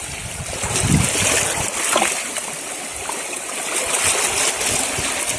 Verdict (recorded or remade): recorded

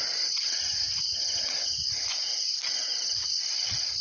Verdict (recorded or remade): recorded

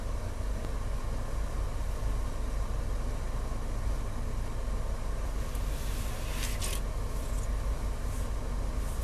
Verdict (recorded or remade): recorded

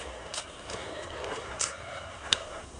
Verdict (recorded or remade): remade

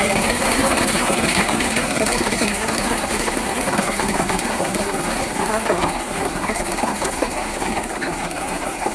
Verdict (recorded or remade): remade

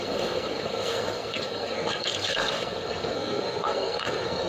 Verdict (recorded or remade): remade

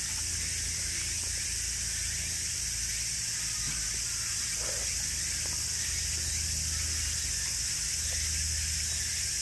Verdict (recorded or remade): recorded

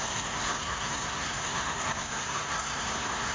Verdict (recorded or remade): remade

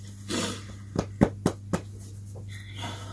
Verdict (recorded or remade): recorded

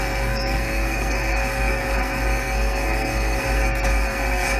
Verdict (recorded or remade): remade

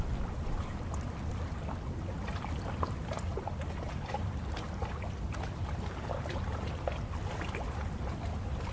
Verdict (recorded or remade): recorded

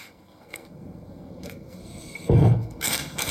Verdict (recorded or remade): remade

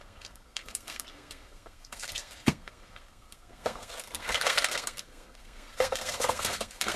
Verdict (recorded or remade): remade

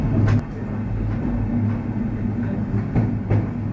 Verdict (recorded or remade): recorded